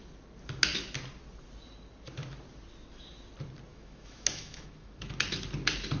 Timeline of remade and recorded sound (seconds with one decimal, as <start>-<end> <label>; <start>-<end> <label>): 0.0-3.7 recorded; 3.7-5.1 remade; 5.1-6.0 recorded